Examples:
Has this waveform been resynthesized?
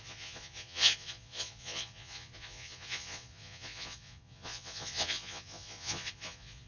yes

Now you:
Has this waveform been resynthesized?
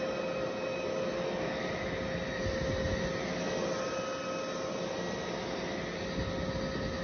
no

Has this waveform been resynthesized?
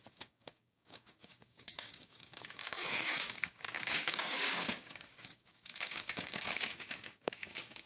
yes